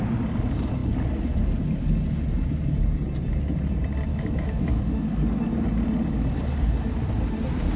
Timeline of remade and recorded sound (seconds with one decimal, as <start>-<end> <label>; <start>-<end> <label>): 0.0-4.1 recorded; 4.1-4.8 remade; 4.8-7.8 recorded